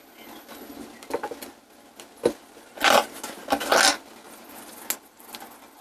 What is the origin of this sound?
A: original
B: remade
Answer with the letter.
A